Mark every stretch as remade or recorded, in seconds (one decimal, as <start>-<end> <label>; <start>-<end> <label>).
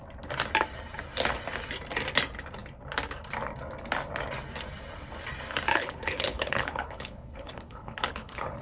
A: 0.0-5.7 recorded; 5.7-8.6 remade